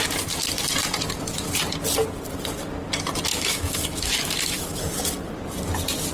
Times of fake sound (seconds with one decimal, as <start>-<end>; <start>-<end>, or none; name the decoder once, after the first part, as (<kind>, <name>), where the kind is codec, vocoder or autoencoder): 3.3-4.8 (autoencoder, DAC-VAE)